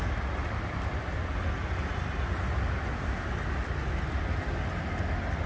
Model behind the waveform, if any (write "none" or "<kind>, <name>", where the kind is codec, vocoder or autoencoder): none